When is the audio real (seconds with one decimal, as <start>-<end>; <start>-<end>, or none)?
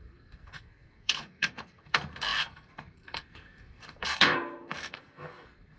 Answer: none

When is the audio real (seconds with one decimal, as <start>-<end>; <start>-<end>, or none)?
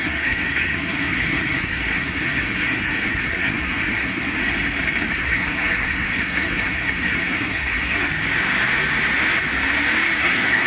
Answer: 4.4-5.1; 8.1-10.2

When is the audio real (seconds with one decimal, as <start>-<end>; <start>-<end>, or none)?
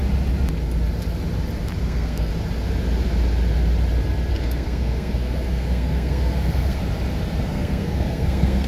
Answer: 0.0-1.8; 2.3-4.3; 6.8-7.4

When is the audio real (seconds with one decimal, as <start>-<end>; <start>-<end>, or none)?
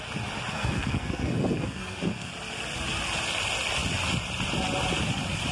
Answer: 0.0-0.5; 2.3-5.5